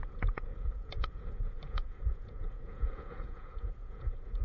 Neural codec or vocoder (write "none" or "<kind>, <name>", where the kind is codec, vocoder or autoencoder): vocoder, Vocos